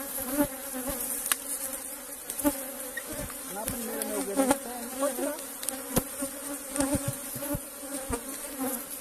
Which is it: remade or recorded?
recorded